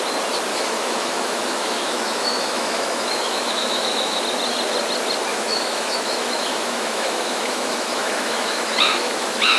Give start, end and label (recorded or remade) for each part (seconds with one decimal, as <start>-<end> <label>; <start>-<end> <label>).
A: 0.0-0.5 recorded; 0.5-4.2 remade; 4.2-5.3 recorded; 5.3-9.6 remade